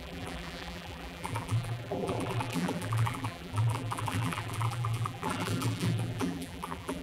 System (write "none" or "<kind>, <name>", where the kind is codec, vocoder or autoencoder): vocoder, BigVGAN v2